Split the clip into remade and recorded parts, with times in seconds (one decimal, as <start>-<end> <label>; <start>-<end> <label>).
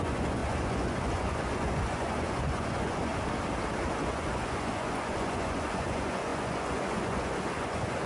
0.0-3.1 remade; 3.1-4.0 recorded; 4.0-8.1 remade